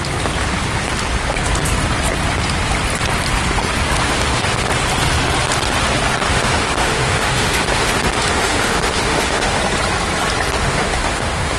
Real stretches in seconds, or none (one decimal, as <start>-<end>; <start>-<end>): 0.0-4.0; 4.7-6.3; 9.6-10.6